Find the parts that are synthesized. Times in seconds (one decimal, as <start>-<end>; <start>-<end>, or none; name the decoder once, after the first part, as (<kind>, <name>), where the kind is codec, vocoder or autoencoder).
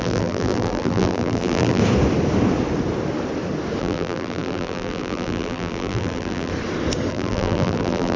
0.0-1.8 (vocoder, BigVGAN v2); 3.8-6.5; 7.1-8.2